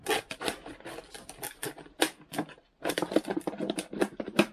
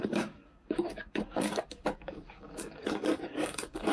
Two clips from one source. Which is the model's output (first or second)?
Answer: second